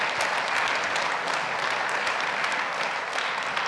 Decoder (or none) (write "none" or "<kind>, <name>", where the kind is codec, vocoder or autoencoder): none